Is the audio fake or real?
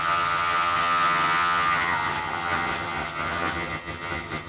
fake